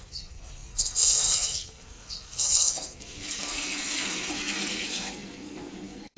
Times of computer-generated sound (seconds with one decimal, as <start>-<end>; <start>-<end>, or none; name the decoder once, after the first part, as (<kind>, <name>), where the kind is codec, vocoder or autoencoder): 0.0-6.2 (codec, SNAC)